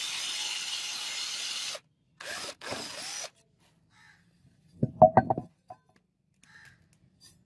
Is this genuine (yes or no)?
yes